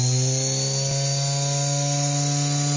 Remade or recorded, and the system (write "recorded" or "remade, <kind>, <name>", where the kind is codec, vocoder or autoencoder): recorded